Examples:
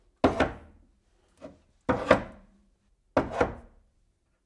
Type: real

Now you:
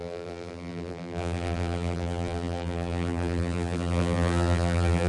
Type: fake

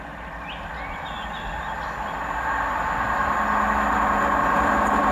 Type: real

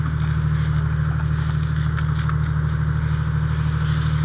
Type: real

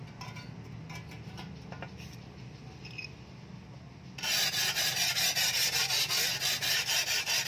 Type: real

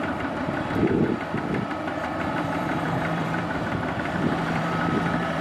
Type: fake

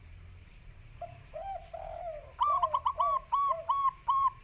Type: fake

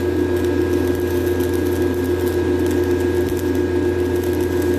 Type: real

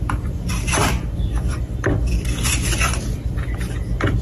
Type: fake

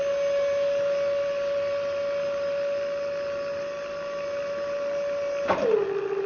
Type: real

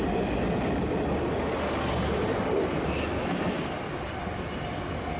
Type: real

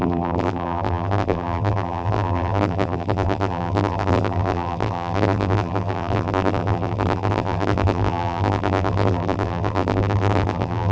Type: fake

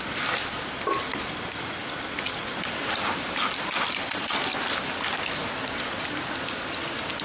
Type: real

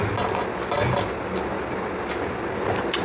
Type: real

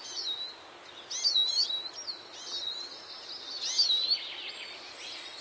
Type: real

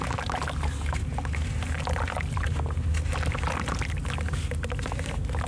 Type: real